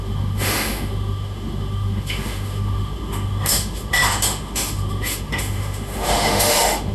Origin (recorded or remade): remade